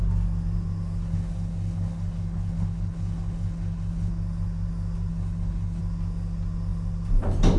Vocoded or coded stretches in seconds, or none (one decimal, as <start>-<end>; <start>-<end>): 1.0-4.1; 5.1-5.8